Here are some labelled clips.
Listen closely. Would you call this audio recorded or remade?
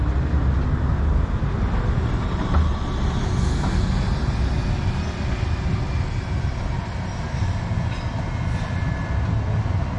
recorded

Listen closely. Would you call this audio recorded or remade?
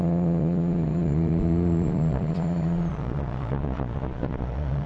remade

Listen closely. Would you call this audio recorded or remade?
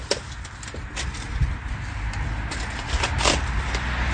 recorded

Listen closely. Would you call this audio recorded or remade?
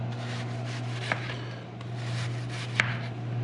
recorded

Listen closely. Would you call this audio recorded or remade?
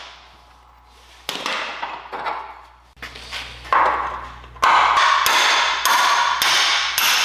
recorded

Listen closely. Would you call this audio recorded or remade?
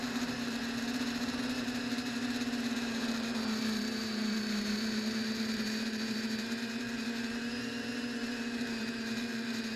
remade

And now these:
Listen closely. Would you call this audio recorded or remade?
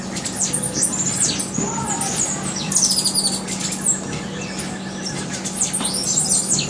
recorded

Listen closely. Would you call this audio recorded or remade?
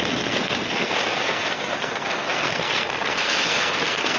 remade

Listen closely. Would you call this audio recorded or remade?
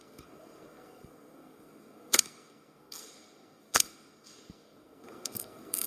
remade